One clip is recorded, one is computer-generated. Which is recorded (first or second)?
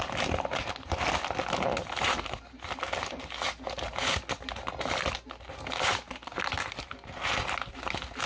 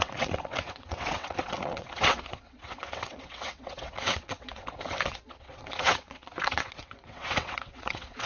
first